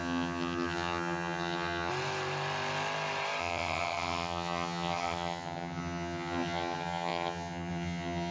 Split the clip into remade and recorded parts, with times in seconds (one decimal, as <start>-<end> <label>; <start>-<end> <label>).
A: 0.0-1.9 remade; 1.9-3.4 recorded; 3.4-8.3 remade